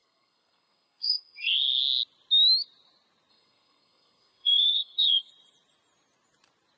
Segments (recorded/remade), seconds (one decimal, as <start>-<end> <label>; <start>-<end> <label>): 0.0-1.8 remade; 1.8-3.3 recorded; 3.3-5.3 remade; 5.3-6.8 recorded